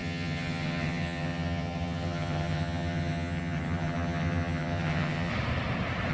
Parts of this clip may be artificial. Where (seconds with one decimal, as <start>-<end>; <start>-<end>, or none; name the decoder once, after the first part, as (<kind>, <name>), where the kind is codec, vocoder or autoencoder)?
0.0-5.3 (vocoder, HiFi-GAN)